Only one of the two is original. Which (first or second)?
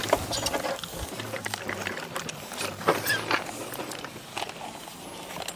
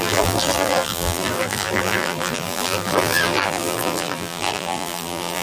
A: first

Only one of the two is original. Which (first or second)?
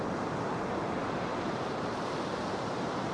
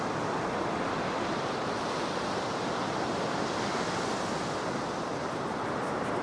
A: second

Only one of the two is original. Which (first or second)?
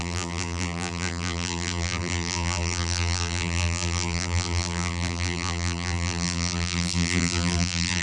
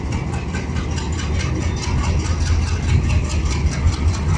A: second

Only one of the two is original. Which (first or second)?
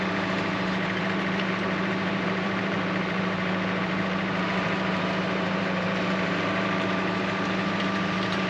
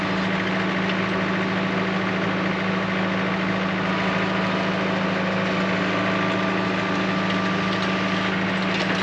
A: second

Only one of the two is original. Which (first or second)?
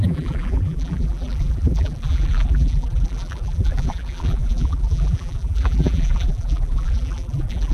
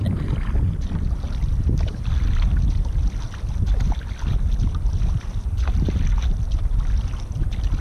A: second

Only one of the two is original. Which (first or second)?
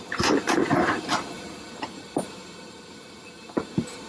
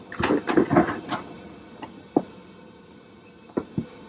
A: second